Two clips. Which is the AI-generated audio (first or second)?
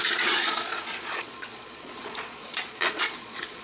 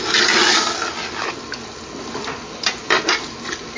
first